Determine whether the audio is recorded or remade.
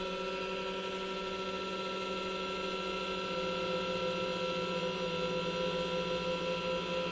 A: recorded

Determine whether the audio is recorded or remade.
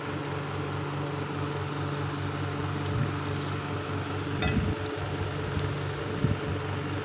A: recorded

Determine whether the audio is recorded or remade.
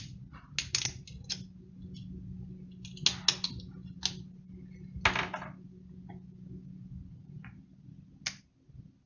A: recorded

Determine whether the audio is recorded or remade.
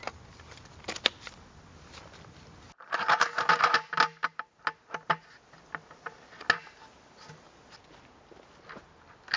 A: recorded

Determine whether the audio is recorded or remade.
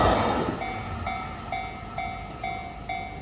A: recorded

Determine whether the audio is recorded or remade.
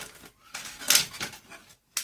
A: recorded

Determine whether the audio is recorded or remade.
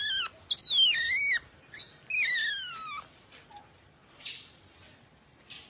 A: recorded